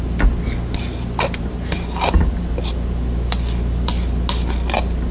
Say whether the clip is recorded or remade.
recorded